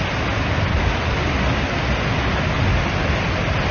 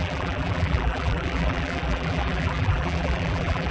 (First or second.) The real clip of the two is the first